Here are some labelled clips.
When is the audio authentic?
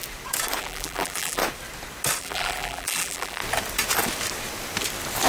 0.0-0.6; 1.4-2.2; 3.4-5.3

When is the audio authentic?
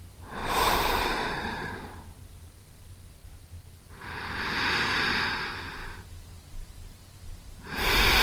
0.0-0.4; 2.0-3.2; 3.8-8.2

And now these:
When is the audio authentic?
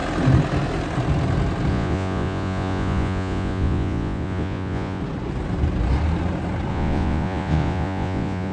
0.0-1.7; 5.0-6.7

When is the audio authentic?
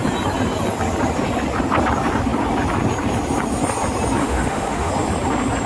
0.0-4.2; 4.9-5.7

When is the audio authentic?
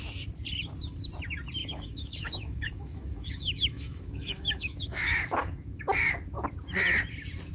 0.0-1.6; 6.1-7.5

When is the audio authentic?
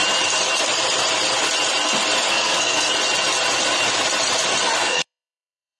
0.0-2.3; 2.9-4.8